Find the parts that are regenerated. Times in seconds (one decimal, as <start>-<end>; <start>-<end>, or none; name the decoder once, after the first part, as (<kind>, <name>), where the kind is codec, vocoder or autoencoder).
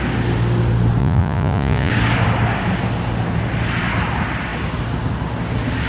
1.0-1.9 (vocoder, Vocos)